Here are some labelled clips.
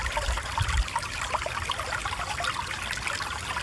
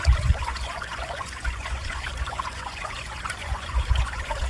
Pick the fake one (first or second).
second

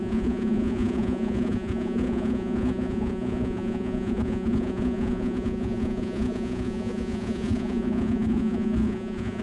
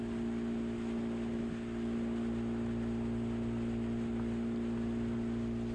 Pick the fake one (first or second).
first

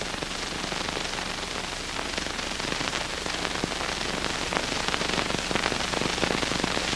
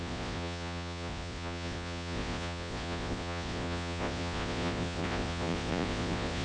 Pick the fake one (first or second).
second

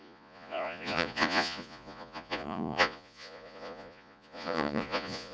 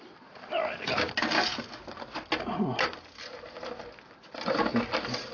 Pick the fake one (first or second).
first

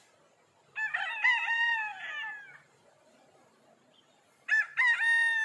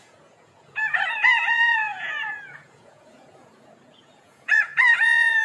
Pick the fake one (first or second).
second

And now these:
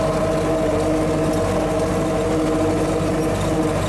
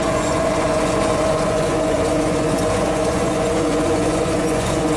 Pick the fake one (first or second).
second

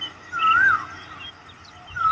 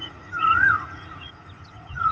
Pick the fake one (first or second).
second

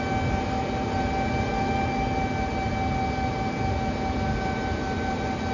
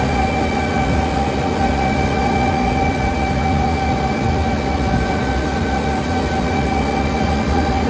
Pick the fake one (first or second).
second